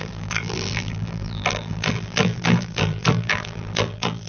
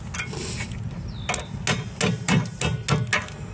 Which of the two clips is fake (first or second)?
first